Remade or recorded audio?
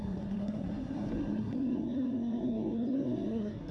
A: remade